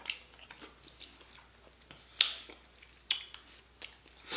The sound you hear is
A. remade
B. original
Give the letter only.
B